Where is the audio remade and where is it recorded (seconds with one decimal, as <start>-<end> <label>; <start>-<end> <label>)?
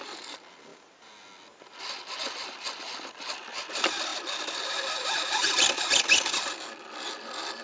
0.0-7.6 recorded